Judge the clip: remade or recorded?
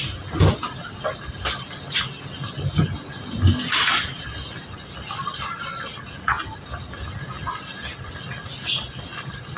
recorded